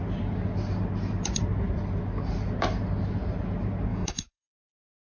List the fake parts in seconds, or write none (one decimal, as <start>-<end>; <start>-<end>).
3.9-5.1